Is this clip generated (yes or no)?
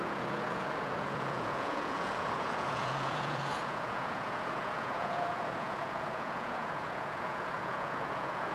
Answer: yes